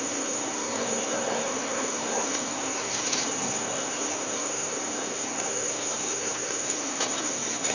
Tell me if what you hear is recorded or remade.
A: remade